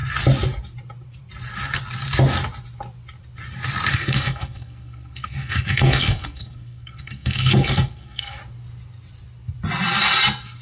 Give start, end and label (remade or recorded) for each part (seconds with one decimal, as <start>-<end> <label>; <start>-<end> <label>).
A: 0.0-3.9 recorded; 3.9-8.4 remade; 8.4-10.6 recorded